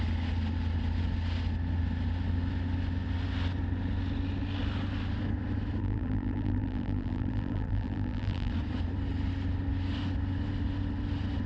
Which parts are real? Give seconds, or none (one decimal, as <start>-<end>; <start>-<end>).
0.0-5.8; 8.5-11.5